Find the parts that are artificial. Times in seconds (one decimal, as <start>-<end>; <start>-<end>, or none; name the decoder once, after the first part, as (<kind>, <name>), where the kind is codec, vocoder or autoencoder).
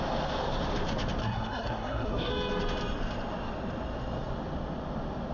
1.2-2.3 (codec, SNAC)